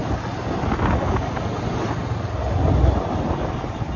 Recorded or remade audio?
recorded